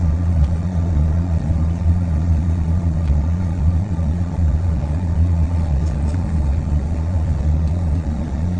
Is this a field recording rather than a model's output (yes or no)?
no